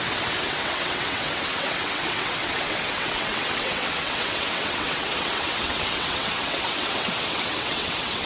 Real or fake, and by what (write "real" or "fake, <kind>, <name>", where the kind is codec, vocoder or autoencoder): fake, vocoder, WaveNeXt